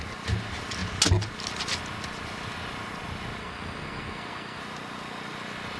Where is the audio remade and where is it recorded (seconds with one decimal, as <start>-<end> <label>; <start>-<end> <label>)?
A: 0.0-3.4 recorded; 3.4-4.6 remade; 4.6-5.8 recorded